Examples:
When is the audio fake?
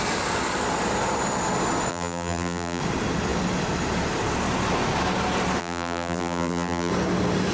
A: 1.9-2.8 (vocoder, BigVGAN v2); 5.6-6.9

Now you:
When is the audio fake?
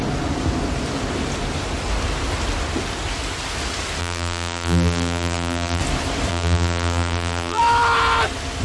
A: 4.0-5.8 (vocoder, BigVGAN v2); 6.3-7.6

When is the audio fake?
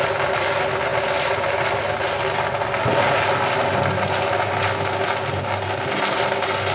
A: none